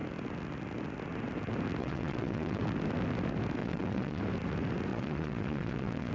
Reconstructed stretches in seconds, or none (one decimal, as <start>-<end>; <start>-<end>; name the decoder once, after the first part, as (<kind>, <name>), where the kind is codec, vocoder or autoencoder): 1.8-2.6 (vocoder, WaveNeXt); 3.6-4.2; 4.9-6.1